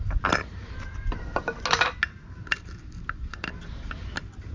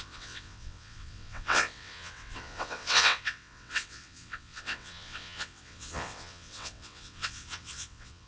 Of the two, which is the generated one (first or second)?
second